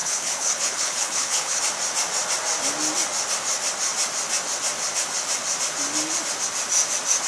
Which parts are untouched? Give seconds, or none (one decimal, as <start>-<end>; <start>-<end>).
1.6-7.3